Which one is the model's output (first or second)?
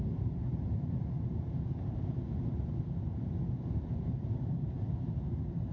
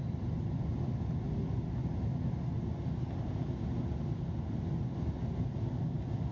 first